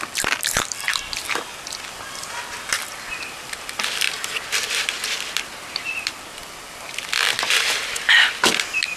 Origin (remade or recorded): remade